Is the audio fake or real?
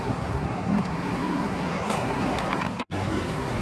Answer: fake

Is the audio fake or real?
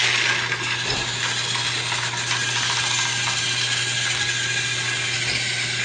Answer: real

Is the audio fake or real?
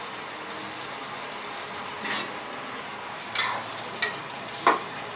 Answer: real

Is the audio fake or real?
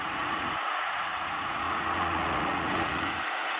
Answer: fake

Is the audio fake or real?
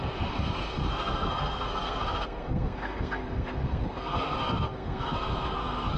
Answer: fake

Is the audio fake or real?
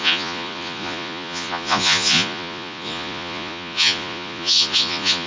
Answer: fake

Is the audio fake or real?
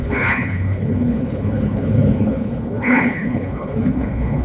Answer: fake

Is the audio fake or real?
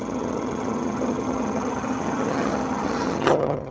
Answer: fake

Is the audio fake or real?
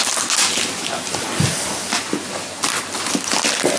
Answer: real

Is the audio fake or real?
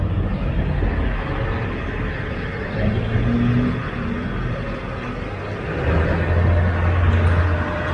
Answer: real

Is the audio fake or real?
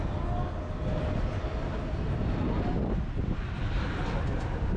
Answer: real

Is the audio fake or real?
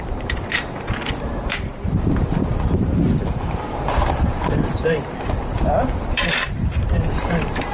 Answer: fake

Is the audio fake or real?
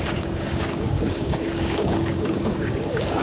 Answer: fake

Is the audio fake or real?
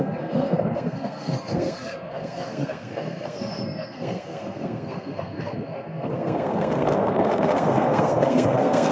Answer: fake